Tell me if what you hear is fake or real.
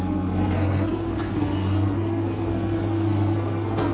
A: fake